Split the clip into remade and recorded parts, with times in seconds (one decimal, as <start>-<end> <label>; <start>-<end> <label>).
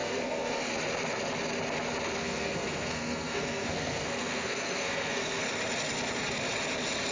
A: 0.0-0.7 remade; 0.7-2.2 recorded; 2.2-5.4 remade; 5.4-7.1 recorded